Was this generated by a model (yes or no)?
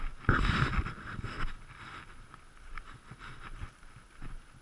no